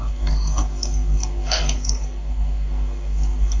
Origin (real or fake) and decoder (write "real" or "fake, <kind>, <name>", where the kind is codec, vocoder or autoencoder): fake, codec, SNAC